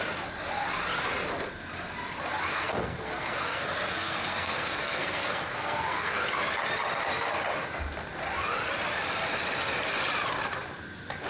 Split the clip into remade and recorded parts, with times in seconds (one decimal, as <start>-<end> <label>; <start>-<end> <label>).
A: 0.0-2.5 recorded; 2.5-6.2 remade; 6.2-11.3 recorded